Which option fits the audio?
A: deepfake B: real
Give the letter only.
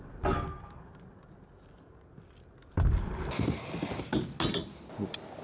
B